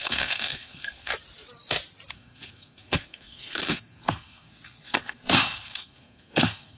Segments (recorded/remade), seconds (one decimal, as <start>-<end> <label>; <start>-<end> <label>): 0.0-1.1 remade; 1.1-2.1 recorded; 2.1-6.8 remade